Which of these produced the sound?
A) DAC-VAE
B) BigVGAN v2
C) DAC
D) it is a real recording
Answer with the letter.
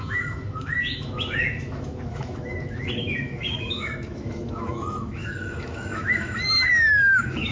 A